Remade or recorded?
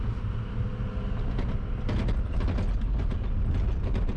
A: recorded